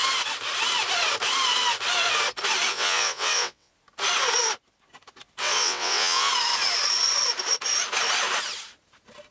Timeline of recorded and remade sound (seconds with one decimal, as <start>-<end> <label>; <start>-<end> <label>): 0.0-2.7 recorded; 2.7-3.7 remade; 3.7-5.4 recorded; 5.4-6.3 remade; 6.3-9.3 recorded